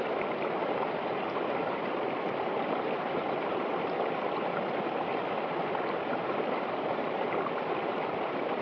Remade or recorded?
recorded